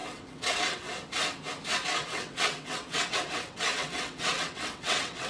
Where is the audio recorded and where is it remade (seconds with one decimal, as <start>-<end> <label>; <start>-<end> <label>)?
0.0-0.9 remade; 0.9-1.9 recorded; 1.9-5.3 remade